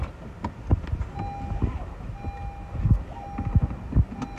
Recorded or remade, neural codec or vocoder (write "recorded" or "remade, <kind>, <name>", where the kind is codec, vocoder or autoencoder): recorded